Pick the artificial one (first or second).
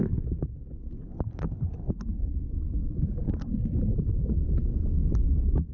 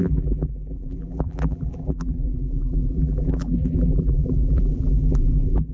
second